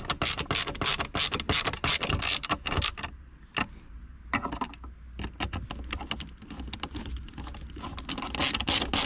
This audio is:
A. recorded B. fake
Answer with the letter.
A